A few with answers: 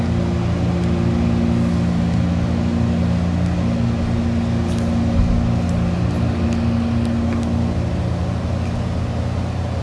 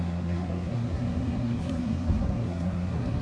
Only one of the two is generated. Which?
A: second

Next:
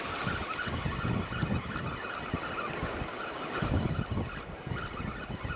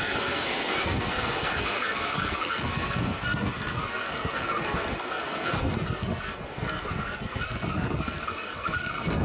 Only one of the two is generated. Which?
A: second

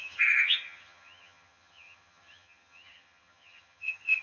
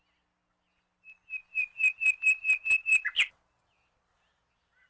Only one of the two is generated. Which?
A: first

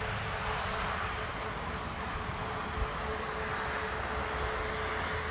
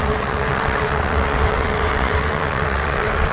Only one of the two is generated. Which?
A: second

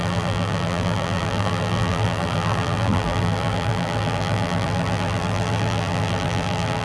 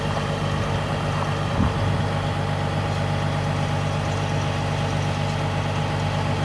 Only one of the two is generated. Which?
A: first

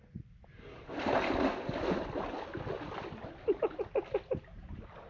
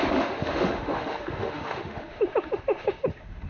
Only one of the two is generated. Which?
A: second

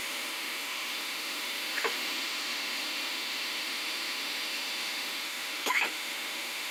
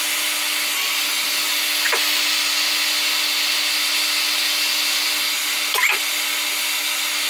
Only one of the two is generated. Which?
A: first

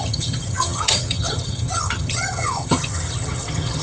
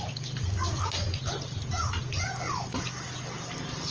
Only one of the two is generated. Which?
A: first